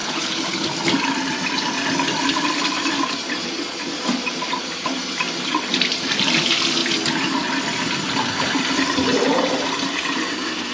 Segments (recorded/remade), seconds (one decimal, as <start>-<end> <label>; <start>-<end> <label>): 0.0-0.7 remade; 0.7-10.7 recorded